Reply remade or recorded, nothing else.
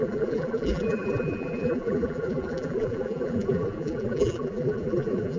remade